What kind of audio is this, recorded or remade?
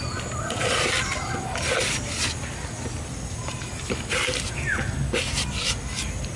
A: recorded